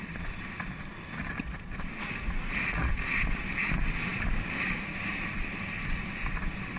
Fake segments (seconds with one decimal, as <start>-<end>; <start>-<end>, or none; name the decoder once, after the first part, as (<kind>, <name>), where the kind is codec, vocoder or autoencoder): 2.0-2.9 (vocoder, Vocos)